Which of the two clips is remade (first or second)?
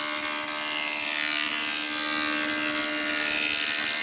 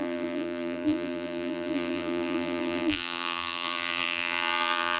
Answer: second